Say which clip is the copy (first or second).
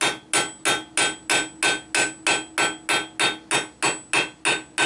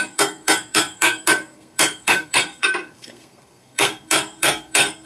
second